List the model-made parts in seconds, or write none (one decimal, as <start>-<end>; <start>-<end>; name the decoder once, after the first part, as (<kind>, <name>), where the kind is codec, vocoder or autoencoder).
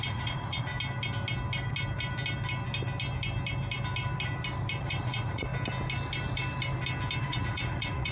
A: 0.0-0.7 (vocoder, Vocos); 4.8-5.5; 7.2-8.1